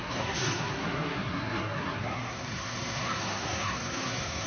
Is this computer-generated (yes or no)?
yes